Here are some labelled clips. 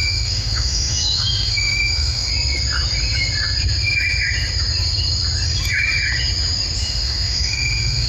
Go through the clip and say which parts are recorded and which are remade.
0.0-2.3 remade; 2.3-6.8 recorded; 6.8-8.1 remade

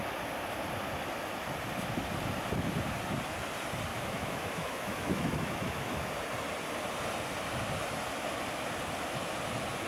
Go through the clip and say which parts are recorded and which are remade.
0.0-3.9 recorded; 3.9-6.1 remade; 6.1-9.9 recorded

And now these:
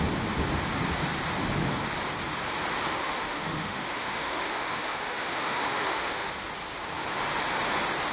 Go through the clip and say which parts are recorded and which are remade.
0.0-3.0 recorded; 3.0-6.3 remade; 6.3-8.1 recorded